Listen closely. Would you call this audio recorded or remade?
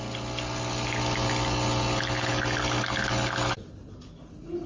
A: recorded